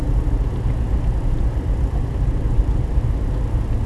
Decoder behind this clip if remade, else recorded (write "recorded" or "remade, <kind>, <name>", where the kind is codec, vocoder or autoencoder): recorded